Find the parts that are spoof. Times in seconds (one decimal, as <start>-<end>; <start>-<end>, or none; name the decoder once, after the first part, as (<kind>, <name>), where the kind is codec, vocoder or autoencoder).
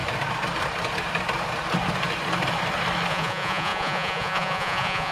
3.1-5.1 (vocoder, Vocos)